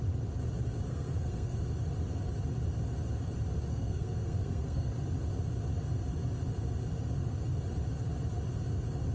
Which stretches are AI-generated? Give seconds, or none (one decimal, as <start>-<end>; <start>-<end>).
0.9-1.6; 3.7-4.9